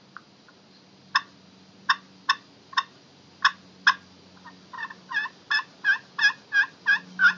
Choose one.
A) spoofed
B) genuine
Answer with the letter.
B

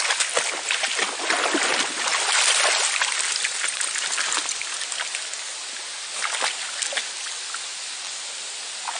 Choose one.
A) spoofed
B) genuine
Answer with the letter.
B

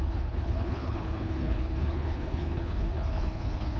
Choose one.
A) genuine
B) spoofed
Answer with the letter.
B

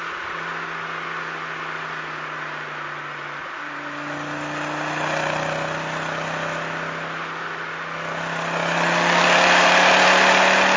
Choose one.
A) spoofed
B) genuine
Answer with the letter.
B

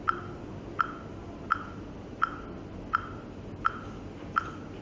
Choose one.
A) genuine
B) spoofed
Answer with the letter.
A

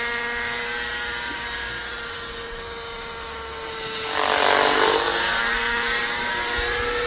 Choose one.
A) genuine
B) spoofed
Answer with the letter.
A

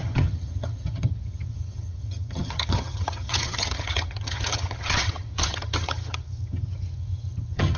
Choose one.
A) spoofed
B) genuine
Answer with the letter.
A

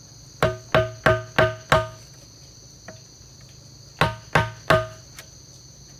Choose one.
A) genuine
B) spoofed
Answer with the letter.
A